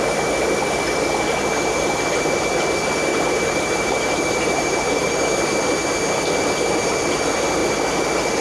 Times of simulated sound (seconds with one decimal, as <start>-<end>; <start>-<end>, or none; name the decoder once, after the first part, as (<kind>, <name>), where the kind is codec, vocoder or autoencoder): 3.1-5.2 (vocoder, BigVGAN v2)